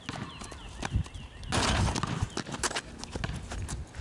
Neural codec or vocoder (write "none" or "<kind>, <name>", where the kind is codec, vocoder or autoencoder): none